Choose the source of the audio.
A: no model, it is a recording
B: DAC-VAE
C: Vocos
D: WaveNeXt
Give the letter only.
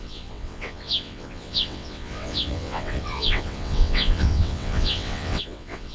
D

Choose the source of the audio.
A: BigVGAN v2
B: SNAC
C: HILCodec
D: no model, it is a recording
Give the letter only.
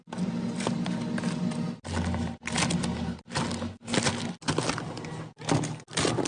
D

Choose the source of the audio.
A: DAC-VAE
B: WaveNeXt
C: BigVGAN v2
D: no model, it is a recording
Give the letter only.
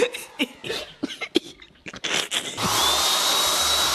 D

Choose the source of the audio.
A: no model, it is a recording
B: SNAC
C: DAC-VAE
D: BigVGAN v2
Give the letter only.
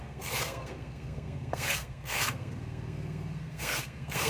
B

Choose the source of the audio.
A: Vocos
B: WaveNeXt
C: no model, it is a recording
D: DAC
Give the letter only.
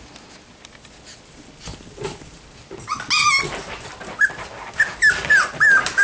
C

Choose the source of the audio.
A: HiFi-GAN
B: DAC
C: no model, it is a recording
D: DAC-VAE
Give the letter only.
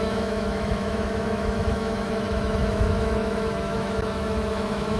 D